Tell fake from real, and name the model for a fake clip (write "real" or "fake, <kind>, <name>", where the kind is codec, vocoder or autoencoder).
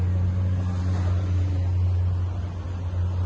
real